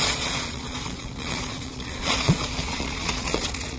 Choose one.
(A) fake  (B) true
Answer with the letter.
A